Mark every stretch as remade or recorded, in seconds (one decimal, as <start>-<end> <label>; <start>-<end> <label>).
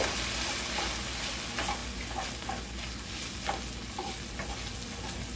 0.0-5.4 recorded